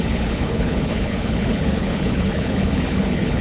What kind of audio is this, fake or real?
fake